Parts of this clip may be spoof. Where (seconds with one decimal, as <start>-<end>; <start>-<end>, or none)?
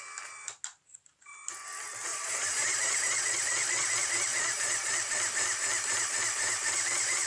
2.1-3.9; 4.3-4.9